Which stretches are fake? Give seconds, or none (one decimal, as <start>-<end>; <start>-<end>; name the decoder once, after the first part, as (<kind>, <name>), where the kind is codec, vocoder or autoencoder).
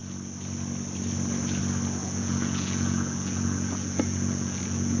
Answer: 2.0-5.0 (vocoder, Vocos)